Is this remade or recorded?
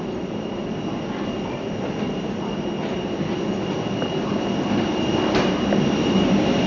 recorded